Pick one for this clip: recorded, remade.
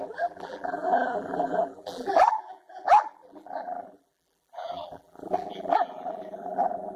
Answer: remade